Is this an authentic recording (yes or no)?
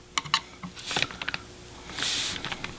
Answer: yes